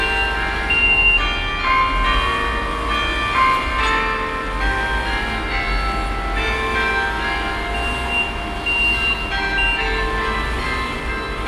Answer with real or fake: real